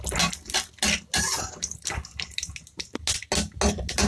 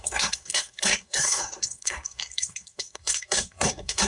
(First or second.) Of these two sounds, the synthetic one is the second